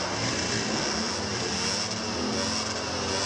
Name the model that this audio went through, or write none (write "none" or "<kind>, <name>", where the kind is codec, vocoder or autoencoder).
none